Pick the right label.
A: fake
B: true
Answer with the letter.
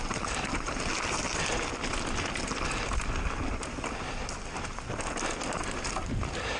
B